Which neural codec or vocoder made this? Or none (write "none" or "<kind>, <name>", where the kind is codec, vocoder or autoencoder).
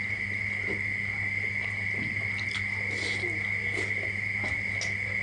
none